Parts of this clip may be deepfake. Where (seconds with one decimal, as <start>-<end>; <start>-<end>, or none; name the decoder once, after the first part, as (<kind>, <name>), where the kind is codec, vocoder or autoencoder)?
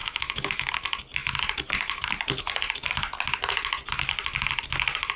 0.0-0.7 (autoencoder, DAC-VAE)